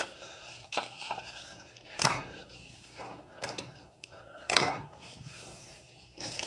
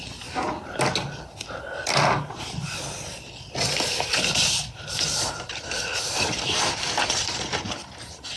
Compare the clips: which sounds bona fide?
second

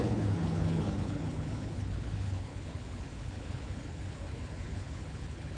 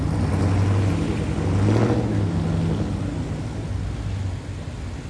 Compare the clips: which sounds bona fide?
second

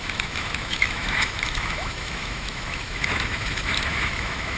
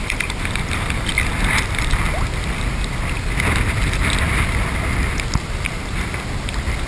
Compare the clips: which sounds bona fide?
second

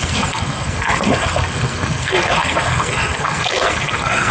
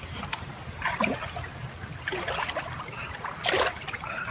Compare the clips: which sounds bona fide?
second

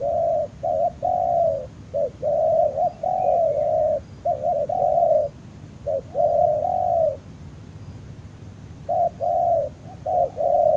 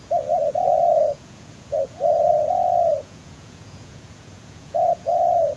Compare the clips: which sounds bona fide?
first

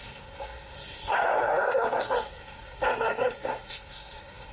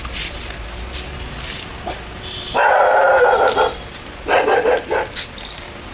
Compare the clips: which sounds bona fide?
second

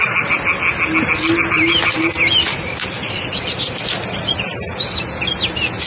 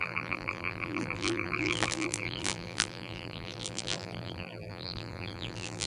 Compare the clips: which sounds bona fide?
first